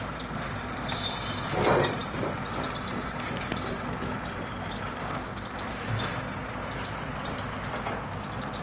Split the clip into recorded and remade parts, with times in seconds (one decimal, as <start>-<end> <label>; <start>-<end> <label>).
0.0-8.6 recorded